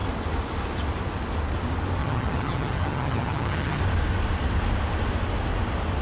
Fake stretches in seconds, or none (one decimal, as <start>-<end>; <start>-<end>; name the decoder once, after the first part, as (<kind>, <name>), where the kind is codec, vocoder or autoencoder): 2.0-3.8 (vocoder, HiFi-GAN)